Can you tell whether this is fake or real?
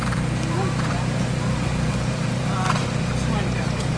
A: fake